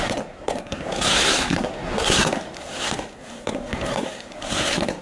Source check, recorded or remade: remade